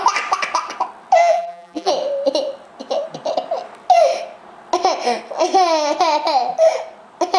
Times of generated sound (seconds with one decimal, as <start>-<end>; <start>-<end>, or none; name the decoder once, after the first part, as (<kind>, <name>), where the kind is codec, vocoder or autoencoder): 1.2-1.9 (vocoder, BigVGAN v2)